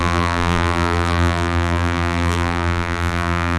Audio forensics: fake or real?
fake